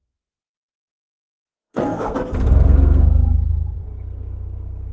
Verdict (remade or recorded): remade